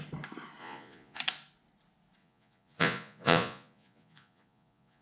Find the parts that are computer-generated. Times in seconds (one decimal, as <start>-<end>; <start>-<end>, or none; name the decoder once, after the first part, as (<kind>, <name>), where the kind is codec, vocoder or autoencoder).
0.6-1.2 (vocoder, Vocos); 2.2-5.0